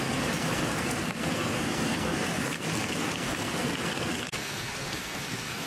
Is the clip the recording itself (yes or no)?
no